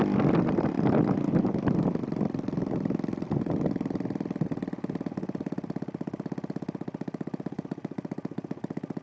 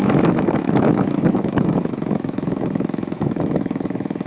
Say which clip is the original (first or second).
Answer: first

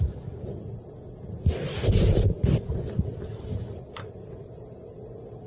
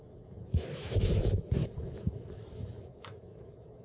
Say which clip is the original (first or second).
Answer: first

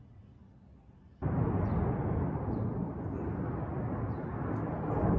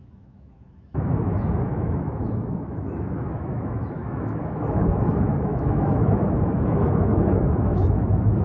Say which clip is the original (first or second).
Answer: first